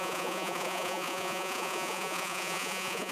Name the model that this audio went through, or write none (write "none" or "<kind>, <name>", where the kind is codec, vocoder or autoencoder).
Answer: vocoder, Vocos